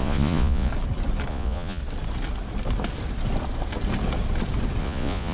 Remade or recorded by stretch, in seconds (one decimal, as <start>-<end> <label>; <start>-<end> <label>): 0.0-0.7 remade; 0.7-1.3 recorded; 1.3-1.8 remade; 1.8-4.8 recorded; 4.8-5.3 remade